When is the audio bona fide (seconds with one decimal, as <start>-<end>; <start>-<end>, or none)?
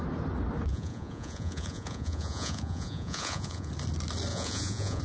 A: 0.0-0.7; 3.7-4.3